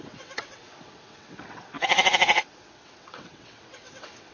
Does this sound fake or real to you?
fake